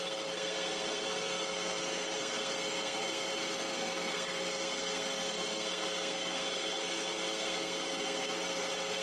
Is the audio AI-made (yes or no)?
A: yes